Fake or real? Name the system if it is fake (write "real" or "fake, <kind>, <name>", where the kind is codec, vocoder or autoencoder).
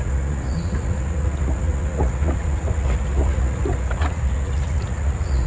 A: fake, vocoder, Vocos